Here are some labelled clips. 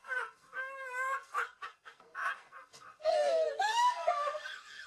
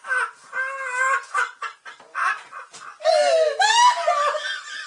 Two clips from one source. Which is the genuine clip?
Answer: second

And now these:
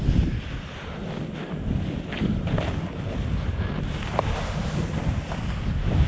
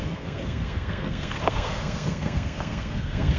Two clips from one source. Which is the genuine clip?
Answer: first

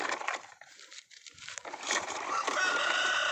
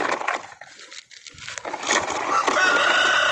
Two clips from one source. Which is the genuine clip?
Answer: second